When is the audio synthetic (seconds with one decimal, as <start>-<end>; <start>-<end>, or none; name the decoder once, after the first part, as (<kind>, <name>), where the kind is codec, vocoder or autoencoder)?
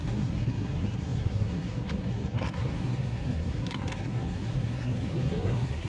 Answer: 0.0-5.9 (codec, SNAC)